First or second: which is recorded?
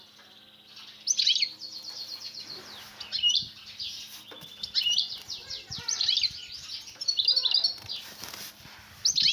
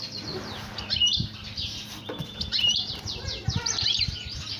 first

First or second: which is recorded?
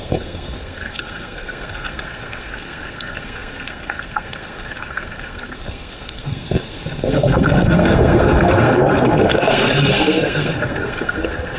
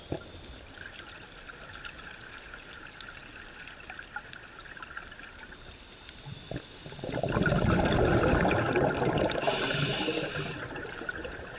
second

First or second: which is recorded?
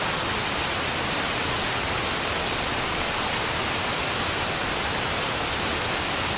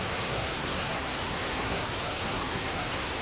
first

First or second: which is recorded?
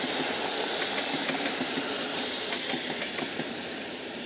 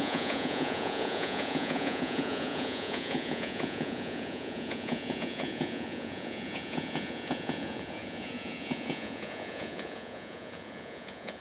first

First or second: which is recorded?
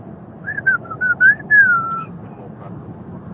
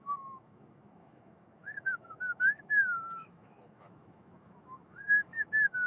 first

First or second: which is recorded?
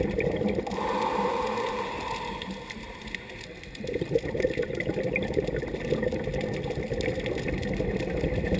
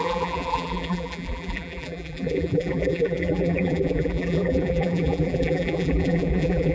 first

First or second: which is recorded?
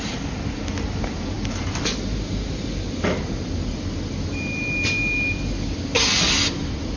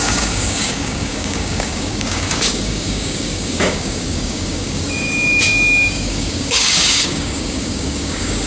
first